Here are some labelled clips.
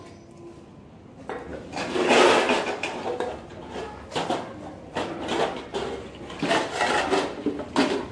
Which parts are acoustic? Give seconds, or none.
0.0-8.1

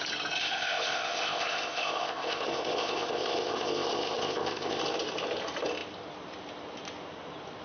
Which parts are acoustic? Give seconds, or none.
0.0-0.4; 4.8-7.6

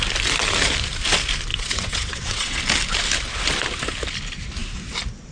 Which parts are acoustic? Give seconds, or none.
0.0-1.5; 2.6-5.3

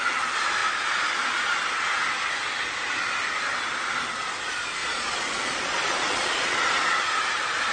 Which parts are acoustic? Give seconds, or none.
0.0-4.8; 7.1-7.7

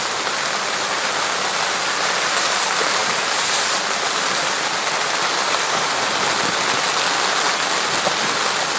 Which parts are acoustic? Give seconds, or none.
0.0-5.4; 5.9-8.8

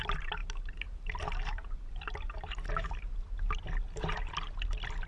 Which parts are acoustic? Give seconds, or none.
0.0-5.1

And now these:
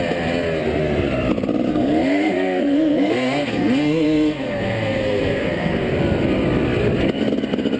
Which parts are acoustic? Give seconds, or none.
0.0-1.7; 6.0-7.8

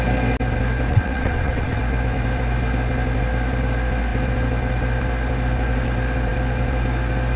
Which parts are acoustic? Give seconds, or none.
0.0-0.9; 1.8-7.4